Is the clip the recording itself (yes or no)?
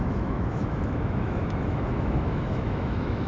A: no